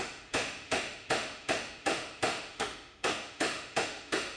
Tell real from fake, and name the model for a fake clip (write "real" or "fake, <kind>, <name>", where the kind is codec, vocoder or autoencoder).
fake, autoencoder, DAC-VAE